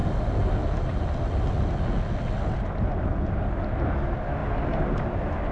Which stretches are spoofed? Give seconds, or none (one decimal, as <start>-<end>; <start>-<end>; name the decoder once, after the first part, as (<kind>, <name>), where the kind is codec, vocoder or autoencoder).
none